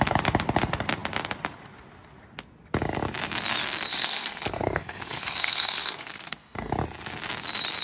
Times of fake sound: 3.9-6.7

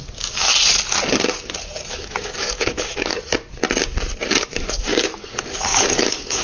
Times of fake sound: 0.0-0.5; 1.9-3.1; 4.3-6.4

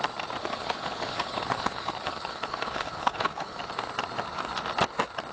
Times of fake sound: 0.4-3.6

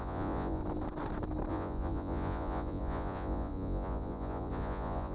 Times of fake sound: 0.0-0.6; 1.5-5.1

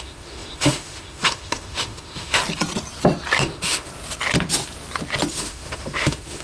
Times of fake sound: 0.0-2.4; 3.4-3.9; 5.3-6.4